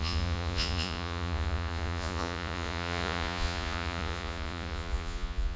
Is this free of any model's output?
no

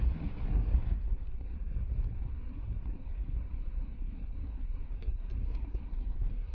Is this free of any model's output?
no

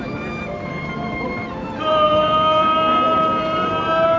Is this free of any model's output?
no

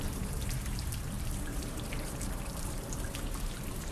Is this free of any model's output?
no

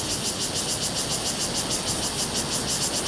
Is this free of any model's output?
yes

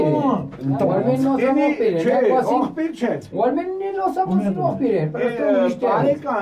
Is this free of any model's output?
yes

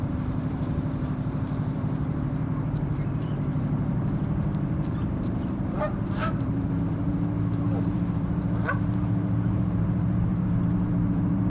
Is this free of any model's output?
no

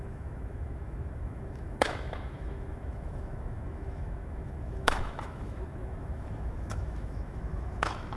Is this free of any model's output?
no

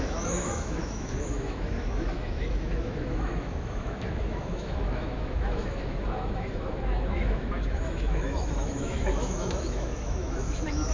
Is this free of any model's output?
no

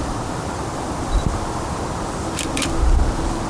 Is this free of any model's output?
yes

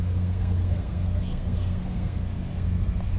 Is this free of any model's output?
no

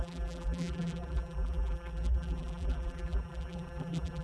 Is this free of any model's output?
no